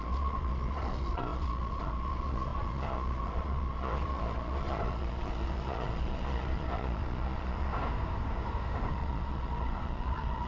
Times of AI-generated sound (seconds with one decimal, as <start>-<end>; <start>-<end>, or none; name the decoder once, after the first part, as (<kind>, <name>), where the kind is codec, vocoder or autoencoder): 0.0-7.7 (vocoder, Vocos); 8.9-10.5